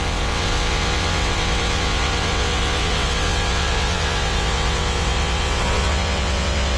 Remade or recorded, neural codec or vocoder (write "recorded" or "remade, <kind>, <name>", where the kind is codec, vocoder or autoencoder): remade, vocoder, WaveNeXt